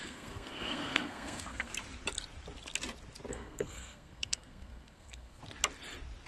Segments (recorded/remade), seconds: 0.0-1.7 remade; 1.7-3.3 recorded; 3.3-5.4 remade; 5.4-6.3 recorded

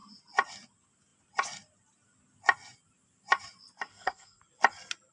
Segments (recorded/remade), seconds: 0.0-3.9 recorded; 3.9-4.4 remade; 4.4-5.1 recorded